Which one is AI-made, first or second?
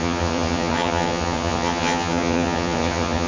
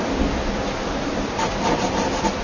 first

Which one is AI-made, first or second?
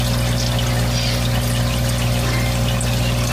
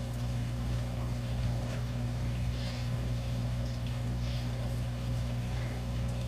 second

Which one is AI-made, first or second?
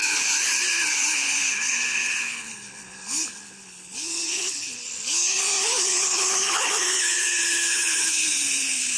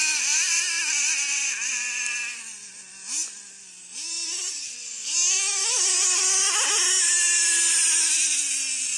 first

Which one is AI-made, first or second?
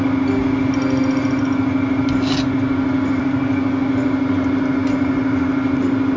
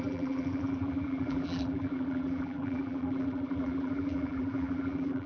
second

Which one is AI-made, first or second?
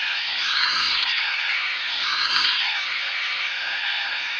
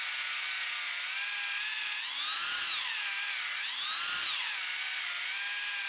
first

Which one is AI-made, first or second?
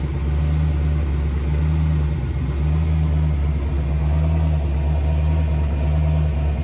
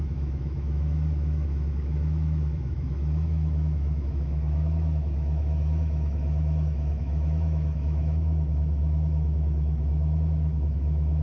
second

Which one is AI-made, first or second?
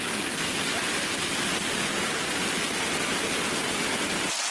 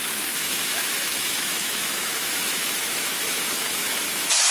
second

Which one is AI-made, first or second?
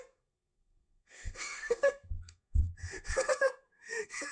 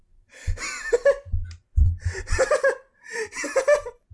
first